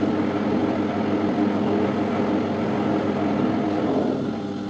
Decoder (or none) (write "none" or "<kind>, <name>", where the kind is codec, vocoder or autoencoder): none